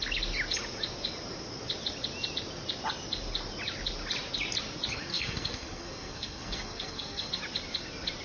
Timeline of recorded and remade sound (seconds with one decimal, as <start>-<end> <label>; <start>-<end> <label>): 0.0-5.1 recorded; 5.1-7.3 remade; 7.3-8.2 recorded